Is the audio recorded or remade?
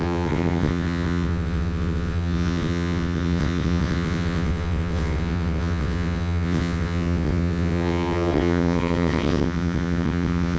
remade